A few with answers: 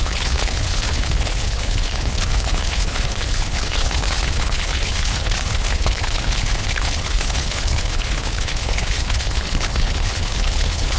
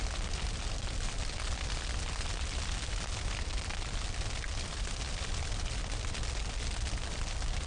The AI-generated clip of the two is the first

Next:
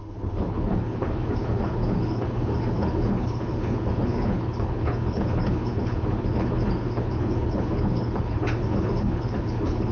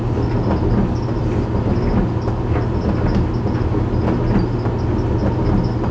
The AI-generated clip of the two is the first